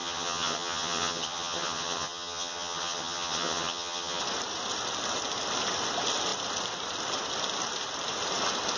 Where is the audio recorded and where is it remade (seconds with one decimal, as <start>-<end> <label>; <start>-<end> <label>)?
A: 0.0-4.2 remade; 4.2-8.8 recorded